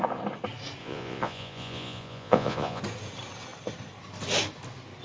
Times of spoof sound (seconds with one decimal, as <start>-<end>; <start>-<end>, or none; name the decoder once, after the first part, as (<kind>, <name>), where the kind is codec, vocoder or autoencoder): 0.8-2.8 (vocoder, Vocos)